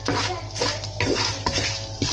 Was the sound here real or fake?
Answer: real